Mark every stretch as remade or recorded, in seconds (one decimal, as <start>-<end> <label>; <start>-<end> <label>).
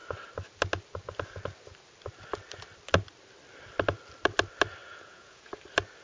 0.0-4.8 recorded; 4.8-5.5 remade; 5.5-6.0 recorded